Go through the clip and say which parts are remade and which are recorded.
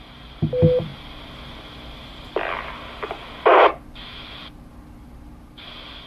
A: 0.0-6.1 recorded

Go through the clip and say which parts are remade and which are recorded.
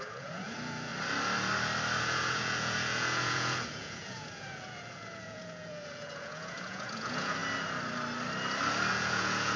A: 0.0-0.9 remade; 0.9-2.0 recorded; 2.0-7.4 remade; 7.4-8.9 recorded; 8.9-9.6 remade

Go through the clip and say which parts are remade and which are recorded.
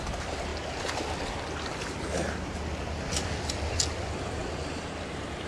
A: 0.0-5.5 recorded